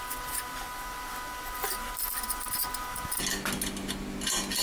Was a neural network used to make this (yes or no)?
no